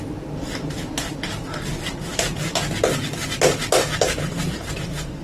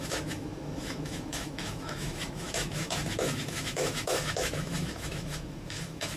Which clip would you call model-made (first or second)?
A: second